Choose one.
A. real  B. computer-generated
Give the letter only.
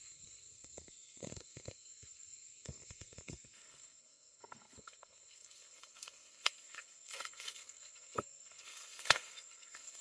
B